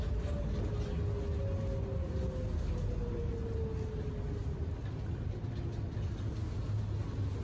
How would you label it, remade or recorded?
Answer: recorded